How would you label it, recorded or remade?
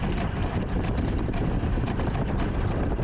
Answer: remade